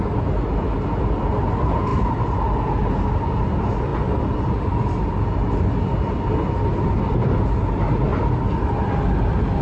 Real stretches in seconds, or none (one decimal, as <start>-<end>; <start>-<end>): 0.0-9.6